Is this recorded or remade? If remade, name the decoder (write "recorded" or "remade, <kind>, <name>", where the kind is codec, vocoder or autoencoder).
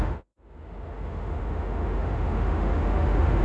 remade, autoencoder, DAC-VAE